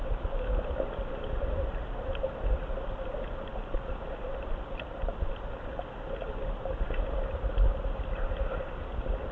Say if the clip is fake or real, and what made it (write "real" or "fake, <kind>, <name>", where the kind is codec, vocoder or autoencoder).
real